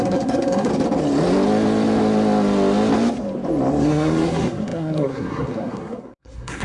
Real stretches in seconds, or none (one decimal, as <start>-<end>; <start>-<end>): 0.7-3.8